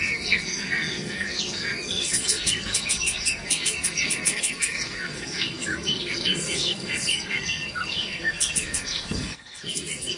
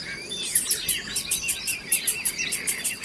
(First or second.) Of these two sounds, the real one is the second